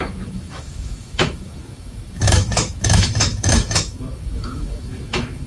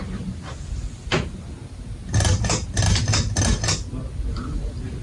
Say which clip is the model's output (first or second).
first